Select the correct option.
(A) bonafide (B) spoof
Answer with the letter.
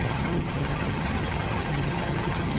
B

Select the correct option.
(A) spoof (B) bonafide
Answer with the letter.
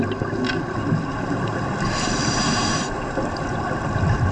B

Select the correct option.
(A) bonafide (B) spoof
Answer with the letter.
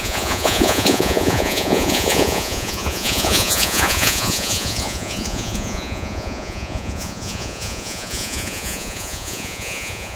B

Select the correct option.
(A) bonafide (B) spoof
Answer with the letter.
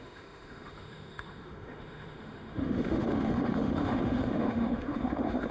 B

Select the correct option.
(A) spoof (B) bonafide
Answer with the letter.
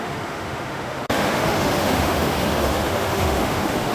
A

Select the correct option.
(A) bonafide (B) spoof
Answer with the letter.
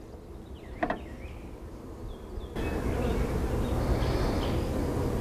A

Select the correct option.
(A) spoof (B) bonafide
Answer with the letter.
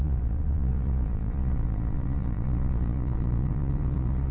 A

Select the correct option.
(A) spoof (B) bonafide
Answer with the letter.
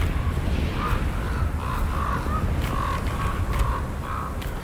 B